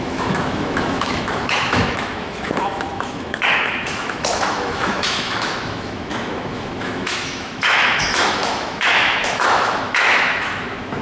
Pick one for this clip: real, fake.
fake